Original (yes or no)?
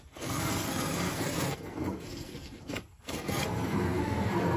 no